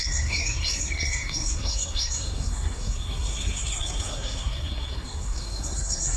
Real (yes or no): no